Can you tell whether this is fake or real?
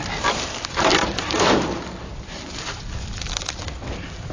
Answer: real